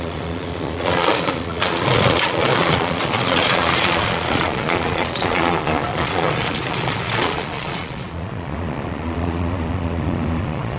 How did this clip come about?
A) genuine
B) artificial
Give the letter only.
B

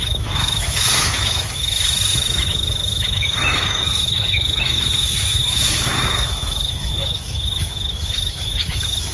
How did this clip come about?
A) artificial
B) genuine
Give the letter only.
A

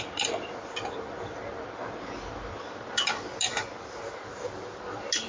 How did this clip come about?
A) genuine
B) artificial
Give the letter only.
A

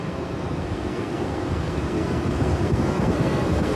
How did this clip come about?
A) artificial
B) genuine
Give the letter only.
A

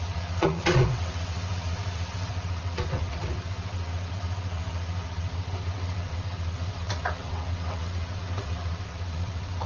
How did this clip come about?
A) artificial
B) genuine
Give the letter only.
A